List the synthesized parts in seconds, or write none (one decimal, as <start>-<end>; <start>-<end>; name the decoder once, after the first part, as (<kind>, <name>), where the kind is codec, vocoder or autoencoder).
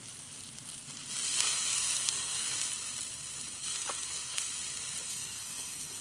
1.5-2.5 (codec, SNAC); 3.6-4.5; 5.1-6.0